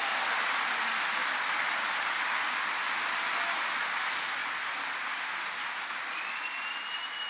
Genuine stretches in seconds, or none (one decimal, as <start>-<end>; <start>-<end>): 0.0-7.3